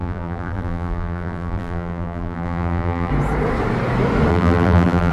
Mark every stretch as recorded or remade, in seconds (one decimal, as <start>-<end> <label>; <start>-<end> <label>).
0.0-3.1 remade; 3.1-4.3 recorded; 4.3-5.1 remade